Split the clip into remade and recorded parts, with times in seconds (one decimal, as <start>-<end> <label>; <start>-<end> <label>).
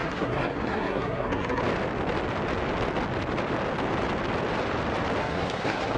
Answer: 0.0-1.6 remade; 1.6-5.2 recorded; 5.2-6.0 remade